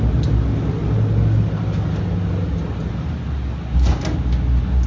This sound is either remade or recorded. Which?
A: recorded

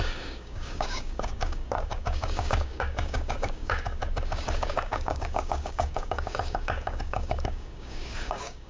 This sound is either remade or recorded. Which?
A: remade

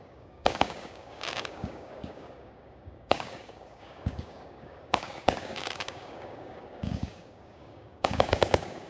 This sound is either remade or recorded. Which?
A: remade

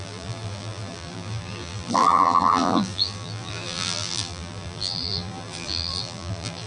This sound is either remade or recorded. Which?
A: remade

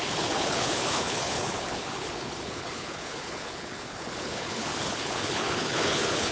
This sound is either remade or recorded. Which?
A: remade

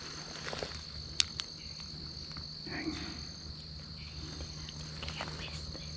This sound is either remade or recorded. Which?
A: recorded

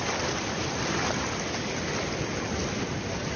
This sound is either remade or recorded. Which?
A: recorded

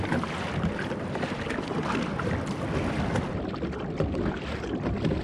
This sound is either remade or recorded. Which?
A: recorded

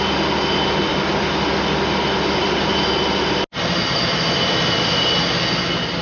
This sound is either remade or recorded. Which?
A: recorded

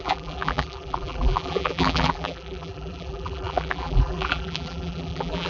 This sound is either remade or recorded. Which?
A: remade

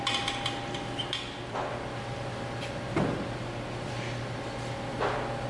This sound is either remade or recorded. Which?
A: recorded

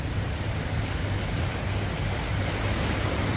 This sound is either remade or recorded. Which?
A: recorded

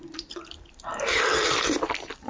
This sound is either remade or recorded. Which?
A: remade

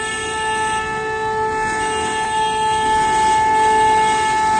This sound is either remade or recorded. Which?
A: recorded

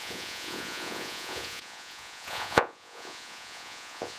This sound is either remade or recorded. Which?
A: remade